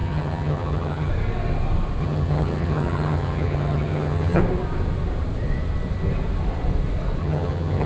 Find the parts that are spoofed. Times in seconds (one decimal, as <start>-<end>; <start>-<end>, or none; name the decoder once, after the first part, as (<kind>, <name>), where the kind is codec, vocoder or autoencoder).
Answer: 0.0-1.1 (vocoder, HiFi-GAN); 2.0-4.4; 7.2-7.9